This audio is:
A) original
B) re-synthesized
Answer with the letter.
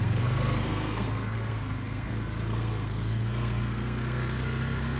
B